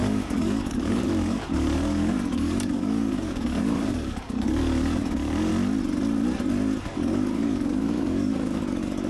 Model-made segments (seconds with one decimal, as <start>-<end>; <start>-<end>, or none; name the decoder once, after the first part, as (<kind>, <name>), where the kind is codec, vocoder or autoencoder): 0.0-5.5 (codec, DAC); 6.8-9.1